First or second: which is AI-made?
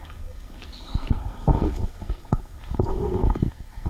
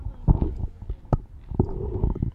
first